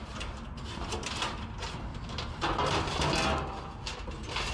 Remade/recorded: recorded